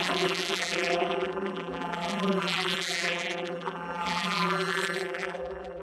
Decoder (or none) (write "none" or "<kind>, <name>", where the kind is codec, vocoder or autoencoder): vocoder, BigVGAN v2